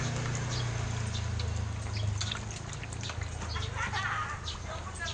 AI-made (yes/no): no